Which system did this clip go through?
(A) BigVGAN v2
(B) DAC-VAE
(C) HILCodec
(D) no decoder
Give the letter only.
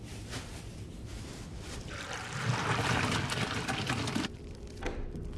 A